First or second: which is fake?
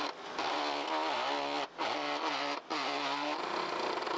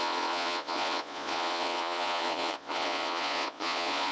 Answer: second